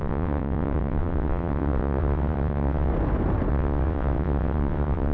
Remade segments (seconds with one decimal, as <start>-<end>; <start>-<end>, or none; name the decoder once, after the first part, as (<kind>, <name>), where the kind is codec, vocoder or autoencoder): 0.0-2.9 (vocoder, WaveNeXt); 3.5-5.1